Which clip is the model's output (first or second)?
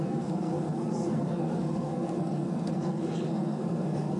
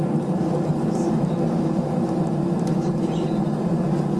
first